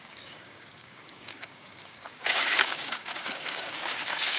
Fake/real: fake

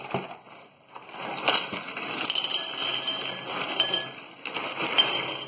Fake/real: real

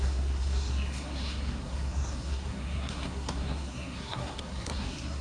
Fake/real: fake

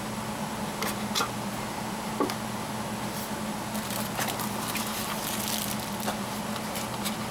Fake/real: real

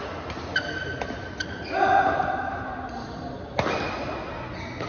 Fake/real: real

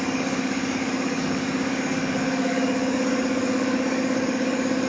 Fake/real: fake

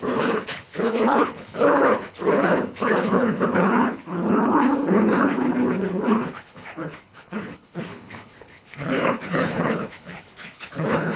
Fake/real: fake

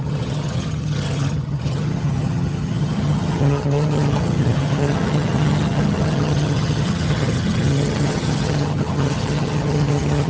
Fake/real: fake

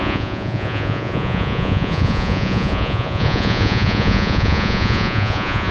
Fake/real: fake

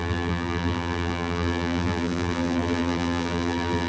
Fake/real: fake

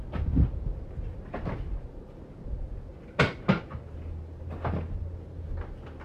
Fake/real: real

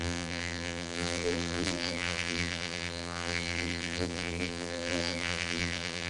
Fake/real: fake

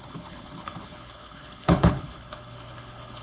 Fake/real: fake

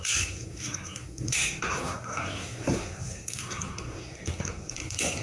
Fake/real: fake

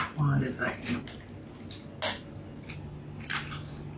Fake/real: real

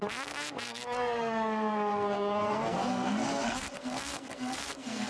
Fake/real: fake